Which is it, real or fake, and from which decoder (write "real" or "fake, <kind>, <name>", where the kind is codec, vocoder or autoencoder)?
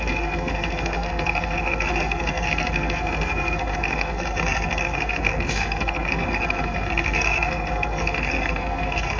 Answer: fake, codec, SNAC